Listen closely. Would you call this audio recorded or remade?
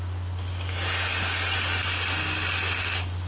recorded